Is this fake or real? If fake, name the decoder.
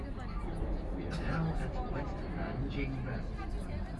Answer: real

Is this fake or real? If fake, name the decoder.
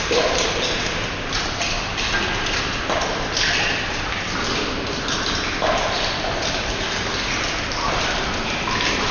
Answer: real